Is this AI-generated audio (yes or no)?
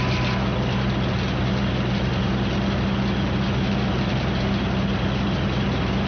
no